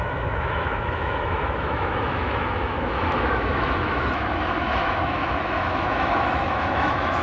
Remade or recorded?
remade